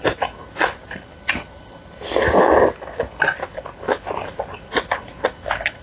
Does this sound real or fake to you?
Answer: real